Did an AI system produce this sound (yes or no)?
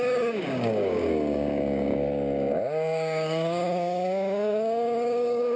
yes